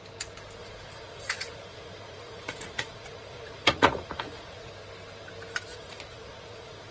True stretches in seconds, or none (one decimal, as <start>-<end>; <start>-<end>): 0.0-0.6; 4.7-5.7